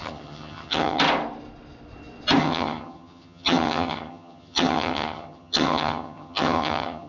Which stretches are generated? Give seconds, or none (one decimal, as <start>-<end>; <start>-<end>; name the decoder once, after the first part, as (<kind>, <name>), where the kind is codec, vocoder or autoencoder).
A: 0.0-1.0 (vocoder, HiFi-GAN); 2.4-7.1